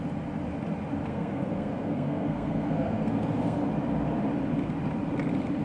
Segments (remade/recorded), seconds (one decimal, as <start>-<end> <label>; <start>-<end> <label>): 0.0-1.1 recorded; 1.1-3.7 remade; 3.7-5.6 recorded